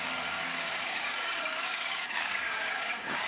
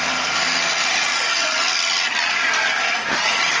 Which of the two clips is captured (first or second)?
second